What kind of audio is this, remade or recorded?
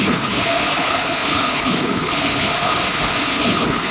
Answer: remade